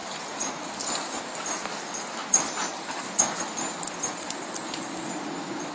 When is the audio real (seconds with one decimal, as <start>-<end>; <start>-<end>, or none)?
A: 0.0-5.7